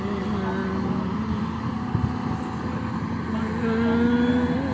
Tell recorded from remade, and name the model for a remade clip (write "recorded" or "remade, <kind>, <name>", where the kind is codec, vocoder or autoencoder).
recorded